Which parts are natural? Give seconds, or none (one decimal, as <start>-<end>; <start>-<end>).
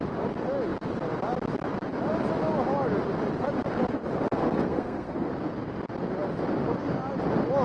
0.0-4.4; 5.3-7.6